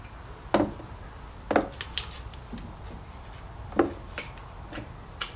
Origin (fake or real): real